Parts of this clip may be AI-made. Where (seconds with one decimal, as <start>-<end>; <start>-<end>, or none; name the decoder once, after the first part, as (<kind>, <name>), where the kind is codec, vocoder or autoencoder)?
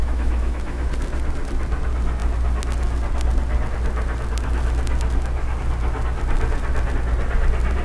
0.0-0.9 (autoencoder, DAC-VAE)